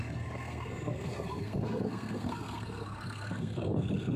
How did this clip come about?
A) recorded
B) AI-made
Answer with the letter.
B